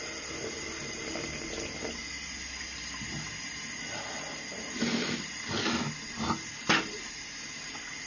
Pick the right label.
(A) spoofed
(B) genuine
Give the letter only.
B